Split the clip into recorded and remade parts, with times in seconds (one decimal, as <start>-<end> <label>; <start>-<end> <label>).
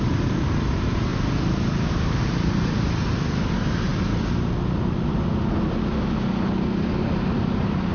0.0-1.1 remade; 1.1-1.9 recorded; 1.9-3.9 remade; 3.9-7.0 recorded; 7.0-7.9 remade